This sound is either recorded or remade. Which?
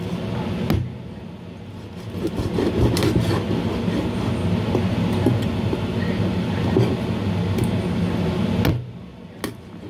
recorded